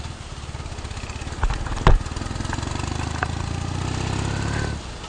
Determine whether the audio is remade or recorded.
recorded